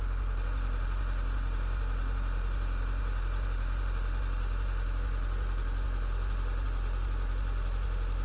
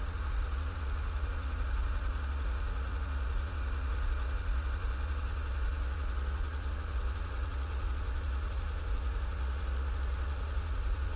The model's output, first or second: second